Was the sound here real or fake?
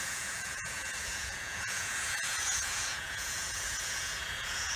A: fake